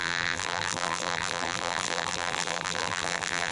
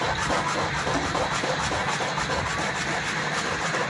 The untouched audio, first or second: second